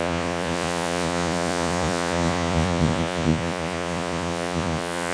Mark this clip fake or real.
fake